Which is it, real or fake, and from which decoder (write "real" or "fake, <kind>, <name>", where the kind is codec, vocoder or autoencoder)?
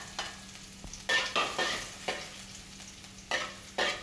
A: real